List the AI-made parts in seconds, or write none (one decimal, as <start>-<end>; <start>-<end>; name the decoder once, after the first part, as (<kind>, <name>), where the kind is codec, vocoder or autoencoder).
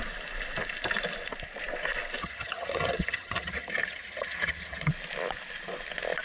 2.2-4.9 (vocoder, HiFi-GAN)